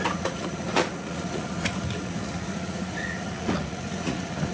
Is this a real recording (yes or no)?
no